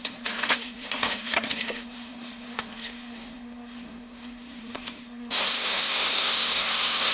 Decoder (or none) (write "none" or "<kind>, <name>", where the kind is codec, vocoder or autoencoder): codec, SNAC